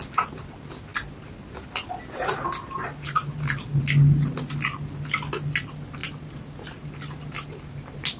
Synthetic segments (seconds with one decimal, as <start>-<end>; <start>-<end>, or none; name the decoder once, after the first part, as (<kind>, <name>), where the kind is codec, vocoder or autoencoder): none